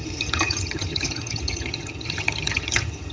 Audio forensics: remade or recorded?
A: remade